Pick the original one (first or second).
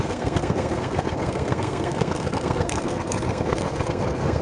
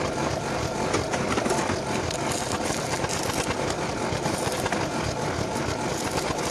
second